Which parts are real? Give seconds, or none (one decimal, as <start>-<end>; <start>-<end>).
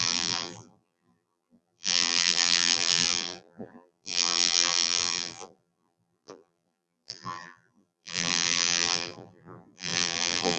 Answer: none